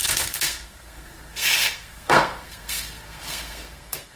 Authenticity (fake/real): fake